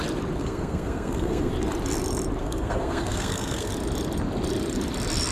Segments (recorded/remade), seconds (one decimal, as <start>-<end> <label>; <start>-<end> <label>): 0.0-0.4 recorded; 0.4-1.5 remade; 1.5-2.4 recorded; 2.4-3.7 remade; 3.7-5.3 recorded